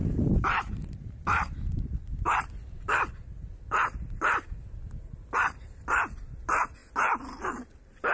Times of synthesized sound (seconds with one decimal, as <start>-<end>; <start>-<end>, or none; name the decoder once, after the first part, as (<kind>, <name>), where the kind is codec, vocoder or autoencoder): none